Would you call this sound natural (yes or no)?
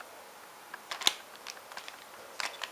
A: yes